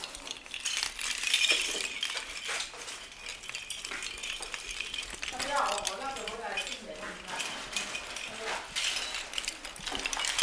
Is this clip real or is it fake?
real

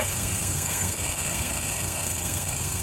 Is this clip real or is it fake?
fake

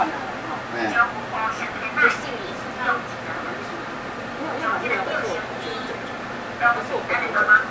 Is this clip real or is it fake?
real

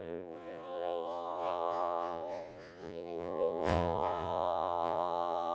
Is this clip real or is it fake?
fake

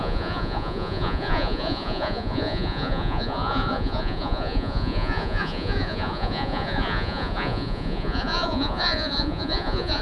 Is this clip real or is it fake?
fake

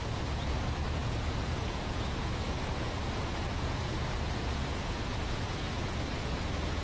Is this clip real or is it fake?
fake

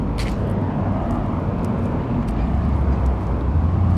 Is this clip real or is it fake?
real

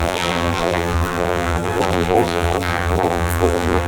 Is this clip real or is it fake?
fake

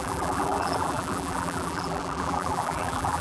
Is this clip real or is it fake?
fake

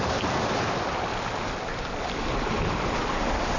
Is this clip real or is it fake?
real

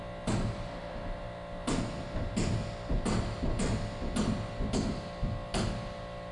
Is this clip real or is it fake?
real